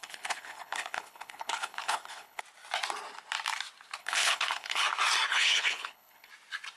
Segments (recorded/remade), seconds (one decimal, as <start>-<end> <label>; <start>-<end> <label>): 0.0-2.4 remade; 2.4-4.0 recorded; 4.0-4.8 remade; 4.8-5.3 recorded; 5.3-6.3 remade; 6.3-6.8 recorded